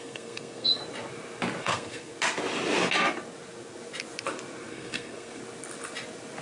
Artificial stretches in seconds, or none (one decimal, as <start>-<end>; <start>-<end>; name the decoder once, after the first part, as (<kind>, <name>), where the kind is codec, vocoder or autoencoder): 0.0-0.8 (codec, SNAC); 1.6-2.1; 4.7-5.4

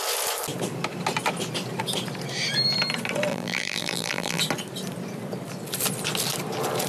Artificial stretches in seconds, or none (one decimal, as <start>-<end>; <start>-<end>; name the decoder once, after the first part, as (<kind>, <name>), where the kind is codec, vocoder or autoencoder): 3.3-4.4 (vocoder, BigVGAN v2)